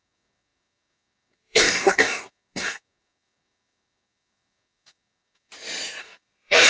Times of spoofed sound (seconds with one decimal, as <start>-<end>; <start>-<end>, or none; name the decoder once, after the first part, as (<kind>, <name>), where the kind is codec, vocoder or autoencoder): 0.0-5.5 (codec, DAC); 6.0-6.7

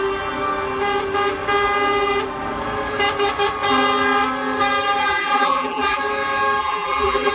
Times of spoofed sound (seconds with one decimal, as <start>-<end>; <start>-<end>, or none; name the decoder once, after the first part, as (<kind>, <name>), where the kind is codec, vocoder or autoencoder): 5.0-6.0 (vocoder, BigVGAN v2); 6.6-7.3

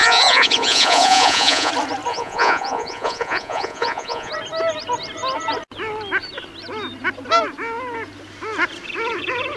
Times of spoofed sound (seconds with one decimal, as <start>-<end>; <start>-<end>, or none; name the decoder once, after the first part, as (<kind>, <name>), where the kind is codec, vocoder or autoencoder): 0.0-1.7 (vocoder, Vocos); 2.1-4.3

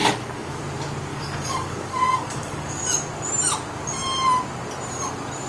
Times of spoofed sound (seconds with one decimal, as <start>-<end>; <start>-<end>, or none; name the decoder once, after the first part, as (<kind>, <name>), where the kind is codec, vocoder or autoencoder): 0.0-0.6 (codec, DAC); 1.1-2.8

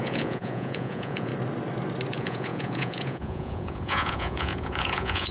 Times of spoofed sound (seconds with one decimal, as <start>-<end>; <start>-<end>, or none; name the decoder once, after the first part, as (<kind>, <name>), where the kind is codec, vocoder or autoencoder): 0.0-1.3 (vocoder, Vocos); 2.1-5.3

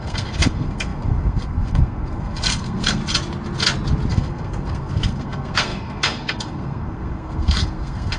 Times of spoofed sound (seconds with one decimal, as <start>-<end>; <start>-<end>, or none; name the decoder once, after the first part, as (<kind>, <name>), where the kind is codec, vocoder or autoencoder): 0.0-3.0 (codec, SNAC); 4.1-8.2

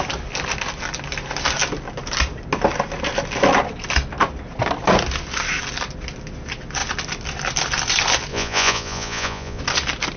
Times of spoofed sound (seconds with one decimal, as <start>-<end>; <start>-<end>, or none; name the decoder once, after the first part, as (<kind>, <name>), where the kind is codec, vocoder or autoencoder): 8.3-9.6 (vocoder, Vocos)